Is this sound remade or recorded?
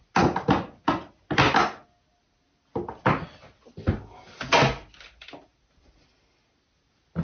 recorded